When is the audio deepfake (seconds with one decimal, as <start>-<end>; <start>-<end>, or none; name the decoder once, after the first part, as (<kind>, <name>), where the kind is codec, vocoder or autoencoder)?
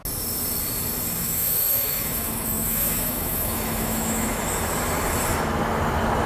1.2-4.4 (autoencoder, DAC-VAE)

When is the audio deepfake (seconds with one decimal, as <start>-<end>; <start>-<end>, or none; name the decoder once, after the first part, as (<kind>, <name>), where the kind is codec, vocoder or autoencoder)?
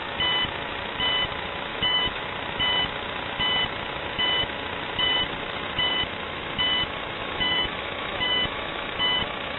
1.7-2.2 (autoencoder, DAC-VAE); 7.2-9.2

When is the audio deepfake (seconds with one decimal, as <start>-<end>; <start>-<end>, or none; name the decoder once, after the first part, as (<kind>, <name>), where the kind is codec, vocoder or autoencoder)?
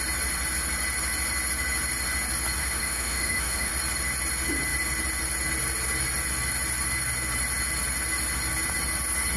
2.6-3.7 (autoencoder, DAC-VAE)